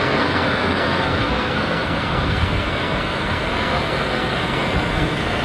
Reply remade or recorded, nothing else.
remade